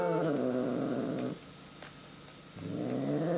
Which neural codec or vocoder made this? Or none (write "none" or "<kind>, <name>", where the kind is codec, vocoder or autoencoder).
none